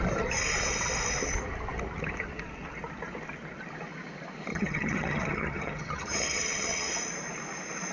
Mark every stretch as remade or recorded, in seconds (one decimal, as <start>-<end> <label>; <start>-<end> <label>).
0.0-4.5 recorded; 4.5-6.9 remade; 6.9-7.9 recorded